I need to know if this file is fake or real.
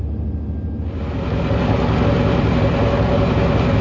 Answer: real